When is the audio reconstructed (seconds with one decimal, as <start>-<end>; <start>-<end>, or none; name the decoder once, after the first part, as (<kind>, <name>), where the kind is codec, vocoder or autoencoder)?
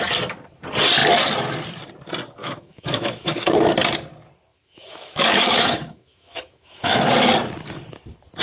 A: 2.4-3.7 (autoencoder, DAC-VAE); 4.5-7.1